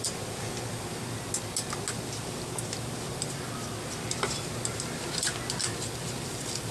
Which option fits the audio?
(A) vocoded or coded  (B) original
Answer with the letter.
B